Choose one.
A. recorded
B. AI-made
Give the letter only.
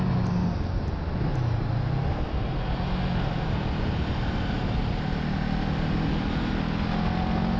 A